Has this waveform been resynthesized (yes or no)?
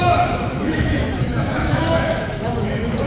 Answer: yes